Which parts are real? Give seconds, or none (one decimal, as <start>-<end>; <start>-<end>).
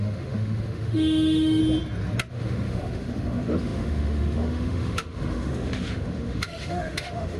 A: 1.6-2.3